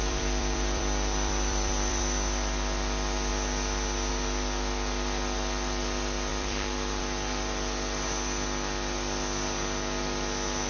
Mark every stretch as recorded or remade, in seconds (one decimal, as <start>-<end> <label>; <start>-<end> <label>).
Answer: 0.0-2.0 remade; 2.0-6.3 recorded; 6.3-7.0 remade; 7.0-10.7 recorded